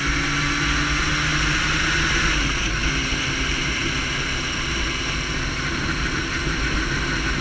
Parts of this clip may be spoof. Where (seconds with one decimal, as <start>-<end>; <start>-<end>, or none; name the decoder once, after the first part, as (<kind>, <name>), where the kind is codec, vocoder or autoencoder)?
none